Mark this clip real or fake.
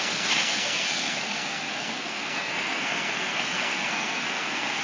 fake